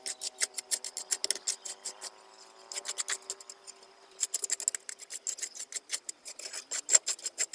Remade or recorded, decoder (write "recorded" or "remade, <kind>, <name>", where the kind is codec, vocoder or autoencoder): recorded